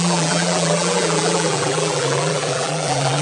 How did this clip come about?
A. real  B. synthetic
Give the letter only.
B